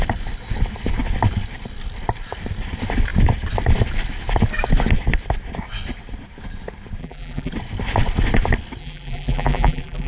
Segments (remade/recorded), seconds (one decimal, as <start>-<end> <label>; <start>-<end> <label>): 0.0-7.0 recorded; 7.0-7.5 remade; 7.5-8.8 recorded; 8.8-10.1 remade